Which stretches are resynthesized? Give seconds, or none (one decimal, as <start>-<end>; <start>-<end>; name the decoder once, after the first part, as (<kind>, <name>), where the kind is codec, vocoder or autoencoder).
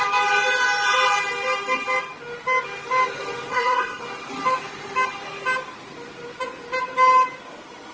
3.5-4.0 (codec, SNAC)